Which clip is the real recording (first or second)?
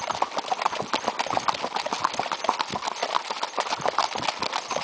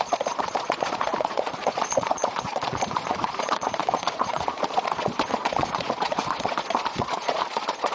first